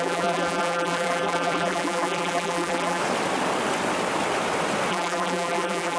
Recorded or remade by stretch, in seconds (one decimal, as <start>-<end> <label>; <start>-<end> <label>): 0.0-3.0 remade; 3.0-4.9 recorded; 4.9-6.0 remade